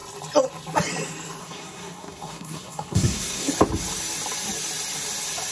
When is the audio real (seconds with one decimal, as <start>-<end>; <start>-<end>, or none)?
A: 0.0-1.4; 3.5-5.5